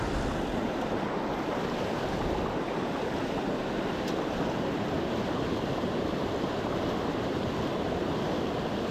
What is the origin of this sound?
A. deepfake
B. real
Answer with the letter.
B